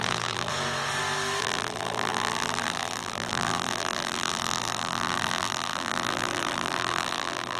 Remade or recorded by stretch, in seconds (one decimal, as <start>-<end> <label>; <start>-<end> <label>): 0.0-0.5 remade; 0.5-1.4 recorded; 1.4-7.6 remade